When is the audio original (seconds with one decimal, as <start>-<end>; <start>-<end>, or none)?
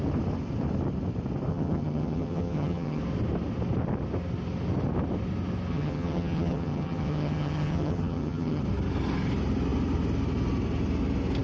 0.0-1.5; 3.0-5.7; 8.6-11.4